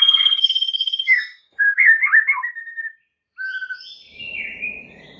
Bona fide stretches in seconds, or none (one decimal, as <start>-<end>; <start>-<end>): 2.0-5.2